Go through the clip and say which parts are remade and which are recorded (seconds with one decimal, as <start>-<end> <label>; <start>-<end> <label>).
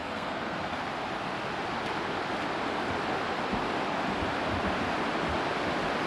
0.0-0.8 remade; 0.8-6.1 recorded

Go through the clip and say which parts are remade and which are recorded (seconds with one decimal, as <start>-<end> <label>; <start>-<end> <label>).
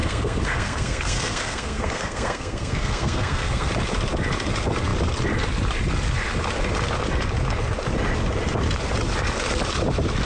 0.0-3.7 remade; 3.7-10.3 recorded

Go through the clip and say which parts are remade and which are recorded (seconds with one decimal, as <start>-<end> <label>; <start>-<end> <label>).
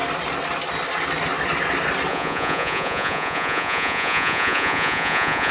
0.0-2.1 recorded; 2.1-5.5 remade